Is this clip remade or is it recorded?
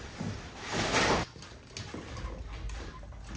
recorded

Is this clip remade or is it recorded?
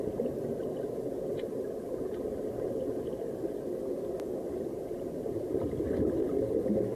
recorded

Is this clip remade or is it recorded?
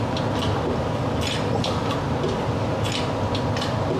recorded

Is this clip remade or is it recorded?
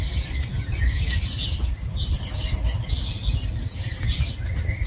recorded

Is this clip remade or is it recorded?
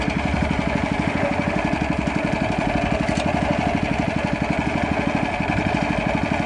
recorded